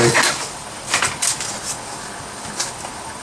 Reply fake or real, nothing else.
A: real